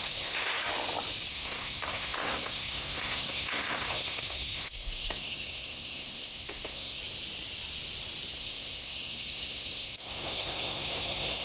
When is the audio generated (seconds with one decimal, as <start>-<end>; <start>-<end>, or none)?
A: 0.0-0.6; 1.3-7.0; 8.3-11.4